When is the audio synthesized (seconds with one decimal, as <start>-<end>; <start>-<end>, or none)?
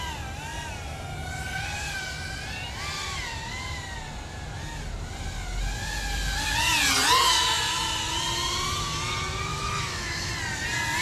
9.5-10.3